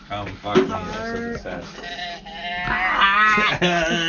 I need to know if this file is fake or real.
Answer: real